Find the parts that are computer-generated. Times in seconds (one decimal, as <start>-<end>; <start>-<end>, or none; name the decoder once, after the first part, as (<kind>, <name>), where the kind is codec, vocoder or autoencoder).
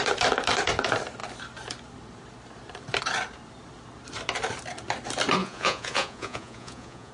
5.4-7.1 (vocoder, Vocos)